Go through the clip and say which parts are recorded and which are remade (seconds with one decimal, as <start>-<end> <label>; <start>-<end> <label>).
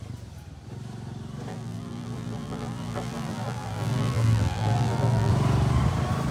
0.0-1.5 recorded; 1.5-5.3 remade; 5.3-6.3 recorded